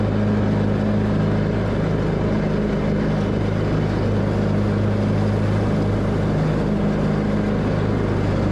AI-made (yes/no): no